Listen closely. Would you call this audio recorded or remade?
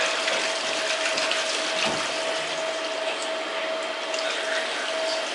recorded